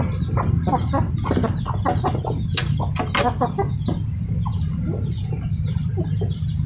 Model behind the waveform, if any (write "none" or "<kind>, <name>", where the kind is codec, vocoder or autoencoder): none